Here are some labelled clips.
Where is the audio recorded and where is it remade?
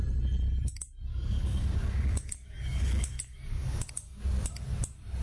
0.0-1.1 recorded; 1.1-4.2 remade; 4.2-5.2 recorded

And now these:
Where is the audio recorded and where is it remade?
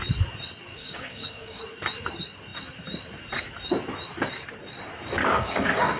0.0-0.7 recorded; 0.7-1.6 remade; 1.6-5.2 recorded; 5.2-6.0 remade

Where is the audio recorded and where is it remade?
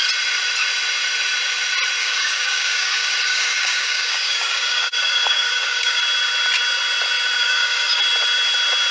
0.0-2.0 recorded; 2.0-6.0 remade; 6.0-7.4 recorded; 7.4-8.0 remade; 8.0-8.9 recorded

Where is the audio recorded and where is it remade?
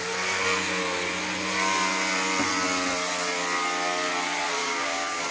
0.0-4.6 recorded; 4.6-5.3 remade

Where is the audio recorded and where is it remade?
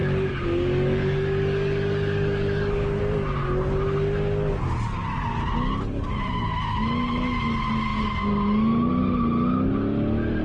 0.0-3.0 remade; 3.0-10.4 recorded